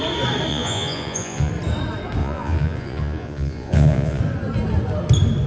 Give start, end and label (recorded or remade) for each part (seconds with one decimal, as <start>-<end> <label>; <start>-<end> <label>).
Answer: 0.0-0.5 recorded; 0.5-1.5 remade; 1.5-2.2 recorded; 2.2-4.2 remade; 4.2-5.5 recorded